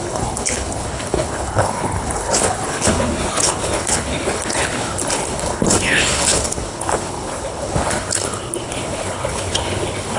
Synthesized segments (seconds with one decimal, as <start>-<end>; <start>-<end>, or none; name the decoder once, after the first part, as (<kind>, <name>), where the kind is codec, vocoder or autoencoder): 0.0-10.2 (codec, HILCodec)